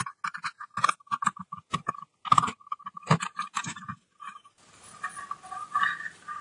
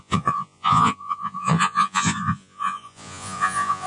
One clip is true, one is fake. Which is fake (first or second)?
second